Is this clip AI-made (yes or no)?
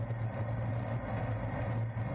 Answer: no